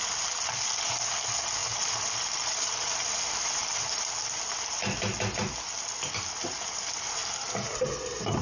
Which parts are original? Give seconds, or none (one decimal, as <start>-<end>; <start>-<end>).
0.0-8.4